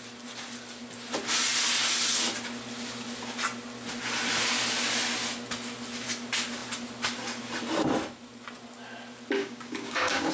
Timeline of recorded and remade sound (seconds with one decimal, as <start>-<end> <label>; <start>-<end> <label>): 0.0-9.4 recorded; 9.4-10.3 remade